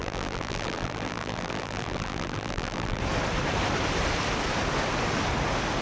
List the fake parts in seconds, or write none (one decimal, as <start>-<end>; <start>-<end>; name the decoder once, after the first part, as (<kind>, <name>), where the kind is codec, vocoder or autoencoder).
0.0-3.0 (vocoder, BigVGAN v2)